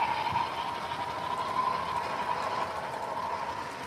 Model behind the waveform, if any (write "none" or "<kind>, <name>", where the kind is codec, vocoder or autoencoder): none